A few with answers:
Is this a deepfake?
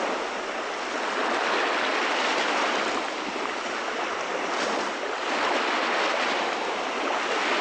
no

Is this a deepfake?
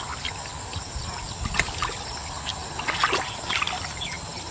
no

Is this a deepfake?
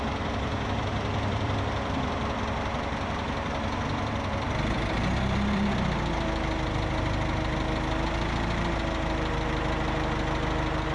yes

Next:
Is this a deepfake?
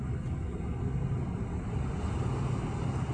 no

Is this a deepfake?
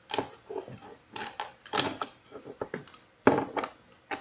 no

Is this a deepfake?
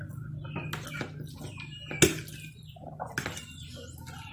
no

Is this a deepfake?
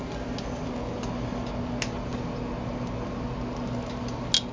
no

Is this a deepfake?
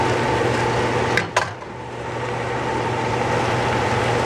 no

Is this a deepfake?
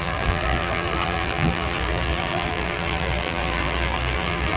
yes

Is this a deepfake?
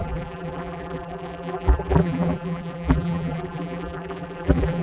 yes